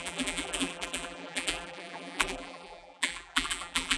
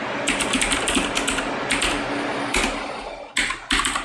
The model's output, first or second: first